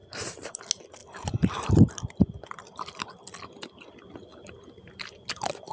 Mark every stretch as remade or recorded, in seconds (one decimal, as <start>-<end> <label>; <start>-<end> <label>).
0.0-0.6 remade; 0.6-1.0 recorded; 1.0-1.7 remade; 1.7-4.3 recorded; 4.3-5.3 remade; 5.3-5.7 recorded